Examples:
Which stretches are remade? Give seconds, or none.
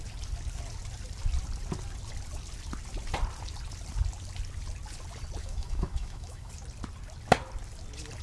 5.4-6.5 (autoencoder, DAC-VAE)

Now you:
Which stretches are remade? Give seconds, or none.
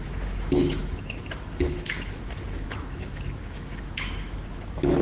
0.0-5.0 (autoencoder, DAC-VAE)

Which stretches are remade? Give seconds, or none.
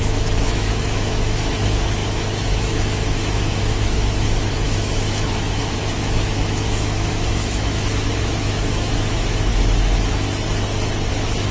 0.0-9.5 (autoencoder, DAC-VAE); 11.1-11.5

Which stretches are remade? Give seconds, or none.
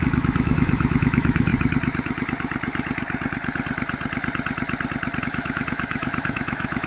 0.0-1.5 (autoencoder, DAC-VAE); 5.2-6.9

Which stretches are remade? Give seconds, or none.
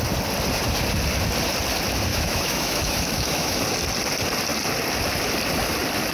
2.1-3.6 (autoencoder, DAC-VAE)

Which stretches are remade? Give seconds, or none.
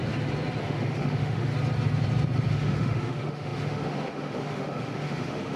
0.6-1.5 (autoencoder, DAC-VAE); 2.5-5.6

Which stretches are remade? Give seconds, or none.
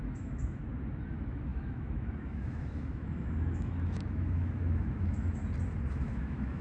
0.0-0.6 (autoencoder, DAC-VAE); 1.1-5.4; 5.9-6.6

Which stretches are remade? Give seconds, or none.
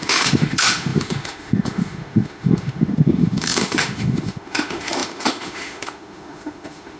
0.0-7.0 (autoencoder, DAC-VAE)